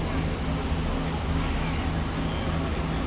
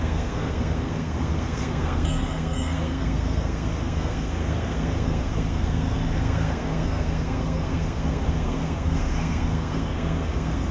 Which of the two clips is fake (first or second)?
second